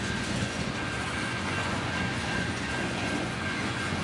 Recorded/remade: remade